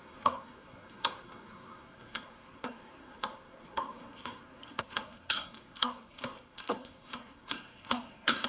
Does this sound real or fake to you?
fake